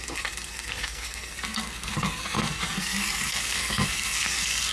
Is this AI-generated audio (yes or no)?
yes